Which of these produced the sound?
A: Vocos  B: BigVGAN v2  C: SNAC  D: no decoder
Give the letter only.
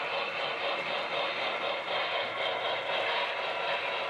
D